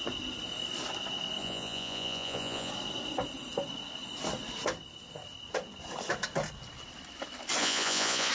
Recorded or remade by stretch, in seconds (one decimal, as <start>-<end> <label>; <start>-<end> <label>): 0.0-1.4 recorded; 1.4-2.7 remade; 2.7-7.6 recorded; 7.6-8.3 remade